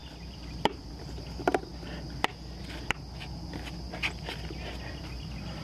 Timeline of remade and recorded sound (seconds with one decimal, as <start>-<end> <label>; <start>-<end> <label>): 0.0-5.6 recorded

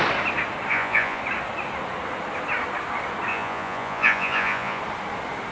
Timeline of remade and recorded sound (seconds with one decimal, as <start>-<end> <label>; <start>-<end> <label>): 0.0-0.7 recorded; 0.7-1.2 remade; 1.2-3.3 recorded; 3.3-4.8 remade; 4.8-5.5 recorded

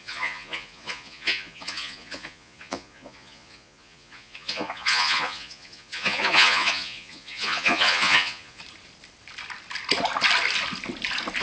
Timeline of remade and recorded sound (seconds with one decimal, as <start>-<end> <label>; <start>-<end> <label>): 0.0-8.6 remade; 8.6-11.4 recorded

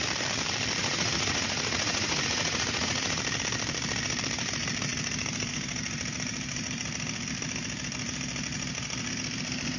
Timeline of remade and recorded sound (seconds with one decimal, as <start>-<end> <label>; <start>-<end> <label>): 0.0-0.8 recorded; 0.8-3.2 remade; 3.2-9.8 recorded